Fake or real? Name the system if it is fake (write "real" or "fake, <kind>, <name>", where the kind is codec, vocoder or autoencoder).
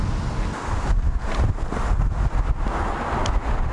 real